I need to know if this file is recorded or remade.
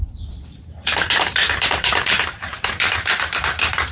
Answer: remade